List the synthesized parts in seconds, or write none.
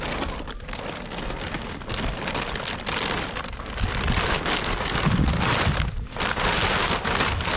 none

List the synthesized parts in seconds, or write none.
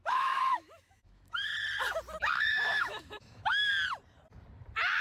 0.0-1.5; 2.3-3.7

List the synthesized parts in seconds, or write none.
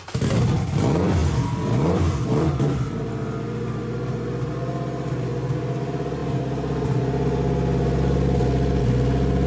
none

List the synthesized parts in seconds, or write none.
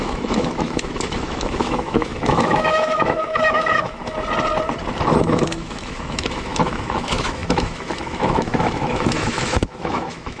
0.0-4.0; 5.2-10.4